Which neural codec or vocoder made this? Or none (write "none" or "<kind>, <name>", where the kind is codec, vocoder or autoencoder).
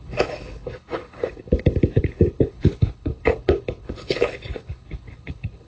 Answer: codec, HILCodec